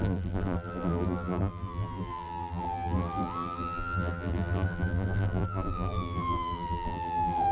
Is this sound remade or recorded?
remade